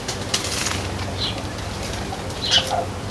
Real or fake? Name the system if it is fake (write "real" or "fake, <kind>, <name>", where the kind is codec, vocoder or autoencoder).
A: real